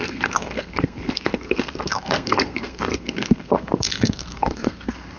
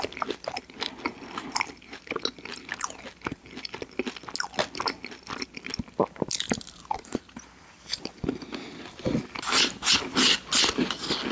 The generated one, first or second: first